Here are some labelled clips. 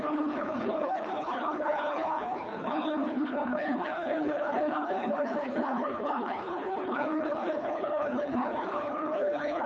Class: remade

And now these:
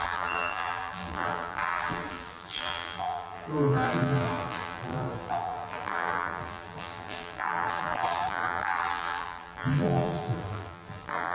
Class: remade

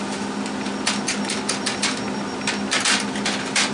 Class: recorded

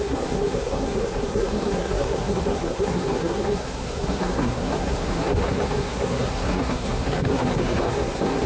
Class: remade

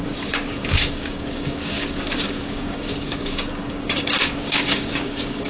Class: remade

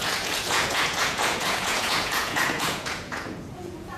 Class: remade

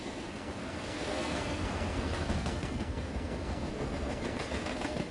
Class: remade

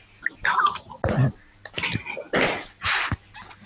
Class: recorded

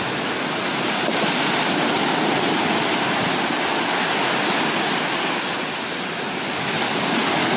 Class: recorded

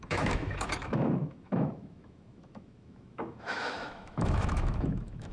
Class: remade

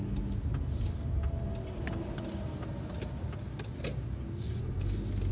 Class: recorded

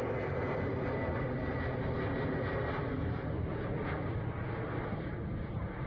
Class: recorded